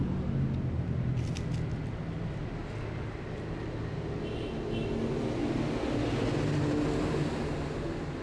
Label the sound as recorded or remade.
recorded